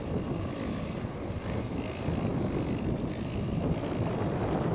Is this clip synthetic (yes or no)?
no